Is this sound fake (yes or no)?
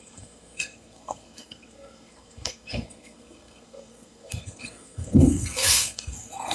yes